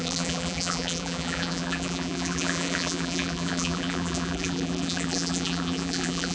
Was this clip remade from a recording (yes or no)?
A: yes